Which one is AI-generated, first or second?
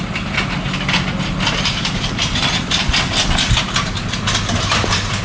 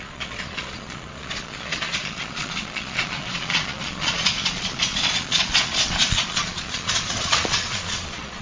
second